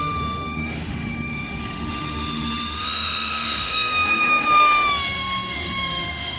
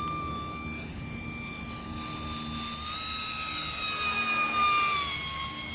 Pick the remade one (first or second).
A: first